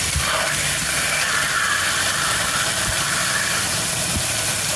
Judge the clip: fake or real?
real